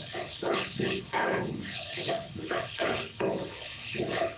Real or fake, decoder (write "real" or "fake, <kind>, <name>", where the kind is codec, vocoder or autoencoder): fake, codec, HILCodec